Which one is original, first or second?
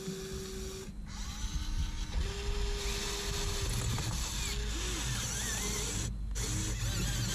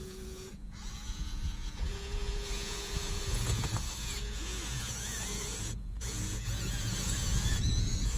first